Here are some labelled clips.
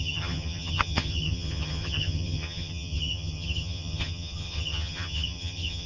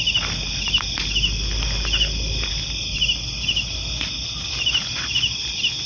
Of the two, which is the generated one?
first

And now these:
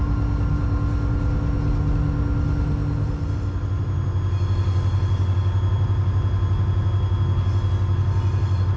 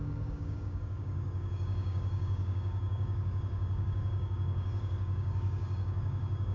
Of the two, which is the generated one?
second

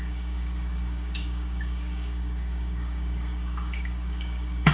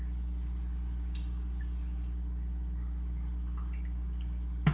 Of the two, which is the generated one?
first